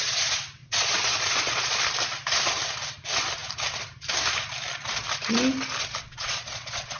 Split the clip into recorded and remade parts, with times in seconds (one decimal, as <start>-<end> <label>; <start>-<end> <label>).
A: 0.0-0.6 recorded; 0.6-1.8 remade; 1.8-6.0 recorded; 6.0-7.0 remade

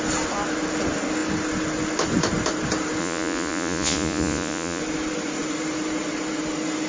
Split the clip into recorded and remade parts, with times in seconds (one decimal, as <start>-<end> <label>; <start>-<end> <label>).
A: 0.0-3.0 recorded; 3.0-4.8 remade; 4.8-6.9 recorded